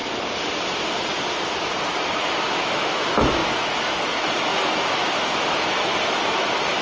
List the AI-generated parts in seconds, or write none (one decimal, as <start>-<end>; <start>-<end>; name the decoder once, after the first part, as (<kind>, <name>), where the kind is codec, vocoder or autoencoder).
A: 2.4-6.8 (autoencoder, DAC-VAE)